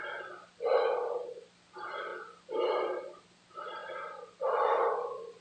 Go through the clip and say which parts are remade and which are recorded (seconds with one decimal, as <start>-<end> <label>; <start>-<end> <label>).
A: 0.0-5.4 recorded